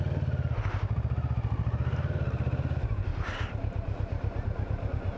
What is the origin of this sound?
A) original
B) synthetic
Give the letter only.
A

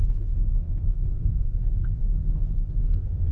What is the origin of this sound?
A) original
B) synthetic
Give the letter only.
B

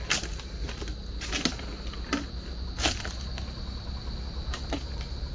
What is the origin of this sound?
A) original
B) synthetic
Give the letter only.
A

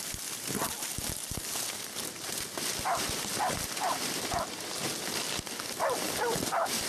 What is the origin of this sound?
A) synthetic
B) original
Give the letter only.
B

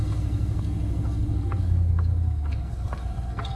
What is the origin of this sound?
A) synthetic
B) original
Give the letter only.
A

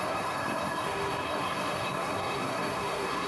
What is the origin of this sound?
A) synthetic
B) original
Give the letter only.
A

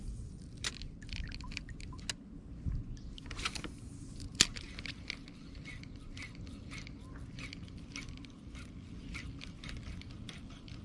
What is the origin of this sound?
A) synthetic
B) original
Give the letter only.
B